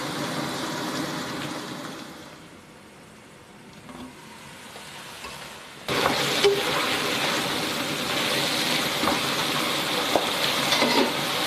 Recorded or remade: recorded